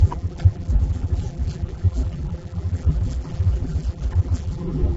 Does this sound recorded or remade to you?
remade